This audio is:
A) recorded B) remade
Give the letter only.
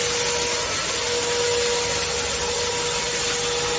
A